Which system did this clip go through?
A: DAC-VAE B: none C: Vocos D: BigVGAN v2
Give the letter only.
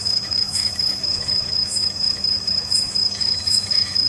A